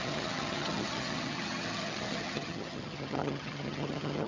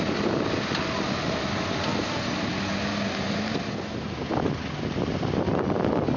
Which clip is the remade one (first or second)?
first